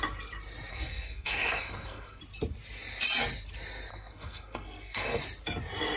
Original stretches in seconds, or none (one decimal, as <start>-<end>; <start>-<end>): 0.0-0.7; 2.2-3.9; 5.2-6.0